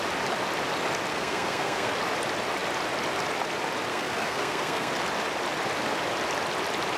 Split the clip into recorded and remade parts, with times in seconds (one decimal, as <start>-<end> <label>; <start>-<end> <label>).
0.0-1.1 recorded; 1.1-1.9 remade; 1.9-3.9 recorded; 3.9-4.9 remade; 4.9-7.0 recorded